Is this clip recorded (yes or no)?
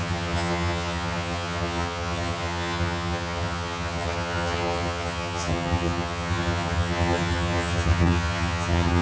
no